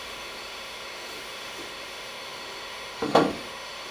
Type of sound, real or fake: fake